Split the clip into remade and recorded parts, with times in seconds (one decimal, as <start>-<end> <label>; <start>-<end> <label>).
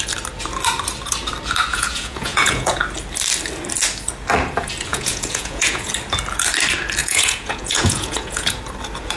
0.0-1.7 recorded; 1.7-2.8 remade; 2.8-4.9 recorded; 4.9-5.9 remade; 5.9-7.0 recorded; 7.0-8.6 remade; 8.6-9.2 recorded